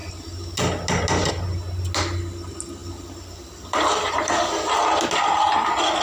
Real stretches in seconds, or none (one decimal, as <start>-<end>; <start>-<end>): 0.0-2.8; 4.8-6.0